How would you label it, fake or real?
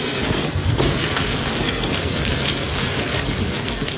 fake